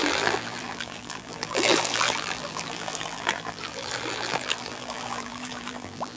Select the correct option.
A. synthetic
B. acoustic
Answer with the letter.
A